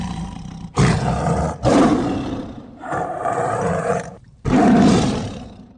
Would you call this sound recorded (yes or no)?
no